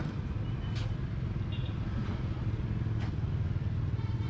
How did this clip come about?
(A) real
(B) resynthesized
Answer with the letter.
A